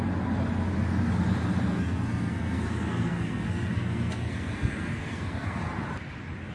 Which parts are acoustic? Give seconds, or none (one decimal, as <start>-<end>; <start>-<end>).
0.0-1.7; 5.6-6.5